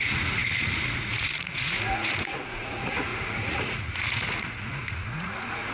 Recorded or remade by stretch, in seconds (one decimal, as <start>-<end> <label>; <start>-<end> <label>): 0.0-5.7 remade